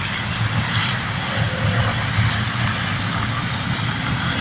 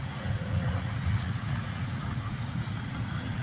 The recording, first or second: first